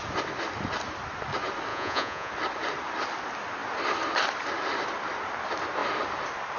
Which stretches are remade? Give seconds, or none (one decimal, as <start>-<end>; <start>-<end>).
1.7-2.3